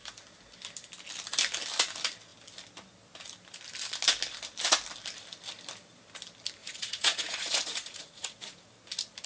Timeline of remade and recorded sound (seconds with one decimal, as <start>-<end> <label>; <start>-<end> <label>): 0.0-6.6 recorded; 6.6-8.6 remade; 8.6-9.3 recorded